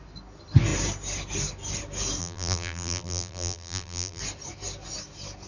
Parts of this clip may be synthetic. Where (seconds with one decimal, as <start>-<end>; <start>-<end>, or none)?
2.2-4.2